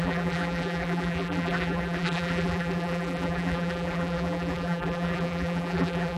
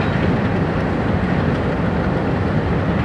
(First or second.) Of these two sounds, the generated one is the first